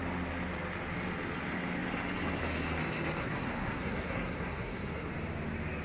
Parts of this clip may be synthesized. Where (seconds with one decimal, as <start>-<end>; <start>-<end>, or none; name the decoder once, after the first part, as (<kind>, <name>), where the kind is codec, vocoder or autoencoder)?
3.2-5.1 (codec, SNAC)